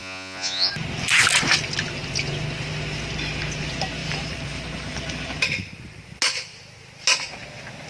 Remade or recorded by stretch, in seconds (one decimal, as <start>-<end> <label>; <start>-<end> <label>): 0.0-0.7 remade; 0.7-7.9 recorded